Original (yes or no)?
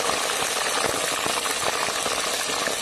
yes